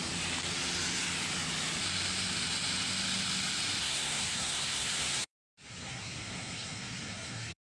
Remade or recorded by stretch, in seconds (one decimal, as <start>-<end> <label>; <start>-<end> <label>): 0.0-3.8 recorded; 3.8-7.7 remade